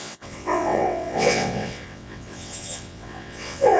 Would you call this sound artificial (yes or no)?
yes